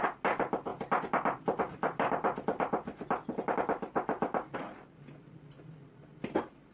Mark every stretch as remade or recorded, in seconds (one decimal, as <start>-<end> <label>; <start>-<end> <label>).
0.0-6.7 recorded

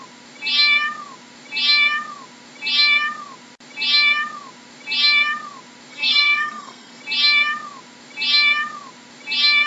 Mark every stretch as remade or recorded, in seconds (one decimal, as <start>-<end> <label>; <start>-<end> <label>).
0.0-5.9 recorded; 5.9-7.0 remade; 7.0-9.7 recorded

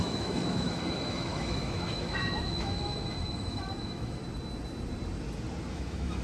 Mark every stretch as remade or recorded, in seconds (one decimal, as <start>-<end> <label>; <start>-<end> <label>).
0.0-4.2 remade; 4.2-5.7 recorded; 5.7-6.2 remade

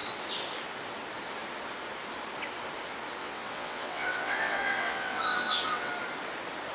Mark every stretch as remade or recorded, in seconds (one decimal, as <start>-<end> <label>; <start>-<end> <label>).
0.0-3.2 recorded; 3.2-5.9 remade; 5.9-6.7 recorded

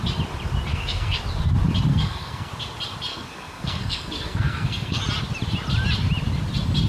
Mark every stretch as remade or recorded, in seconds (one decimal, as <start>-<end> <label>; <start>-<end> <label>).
0.0-0.7 recorded; 0.7-1.2 remade; 1.2-1.9 recorded; 1.9-2.5 remade; 2.5-3.1 recorded; 3.1-5.0 remade; 5.0-6.9 recorded